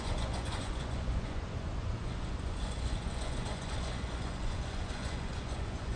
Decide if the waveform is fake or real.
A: fake